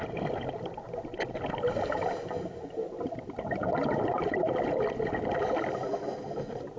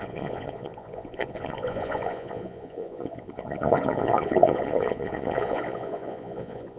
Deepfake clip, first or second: second